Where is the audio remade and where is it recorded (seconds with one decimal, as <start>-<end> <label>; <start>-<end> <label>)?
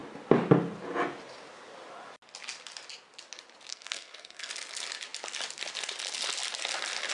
0.0-3.7 recorded; 3.7-4.5 remade; 4.5-7.1 recorded